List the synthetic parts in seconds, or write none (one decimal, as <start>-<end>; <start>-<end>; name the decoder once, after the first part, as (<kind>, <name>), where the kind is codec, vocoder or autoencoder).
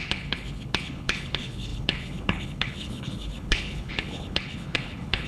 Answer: 0.0-5.3 (codec, HILCodec)